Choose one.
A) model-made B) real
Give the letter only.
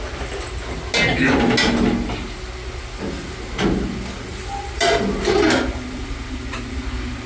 B